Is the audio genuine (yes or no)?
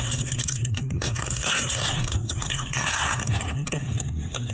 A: no